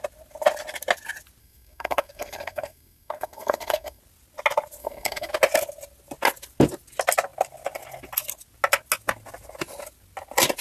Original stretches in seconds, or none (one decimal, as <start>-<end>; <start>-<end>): 0.0-1.4; 4.0-4.8; 5.3-10.6